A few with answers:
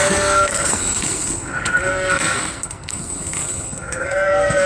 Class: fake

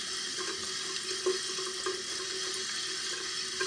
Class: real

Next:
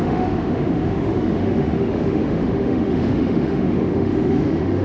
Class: fake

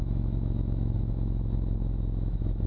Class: fake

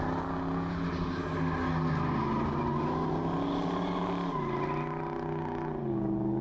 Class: real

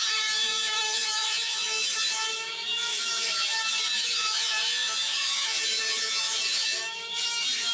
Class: fake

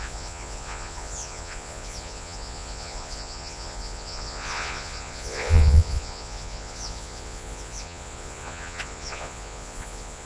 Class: fake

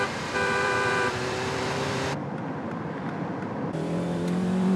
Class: fake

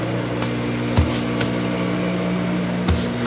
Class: real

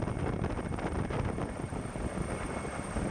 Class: real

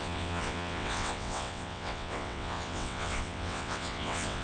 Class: fake